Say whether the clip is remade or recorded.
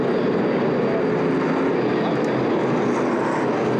recorded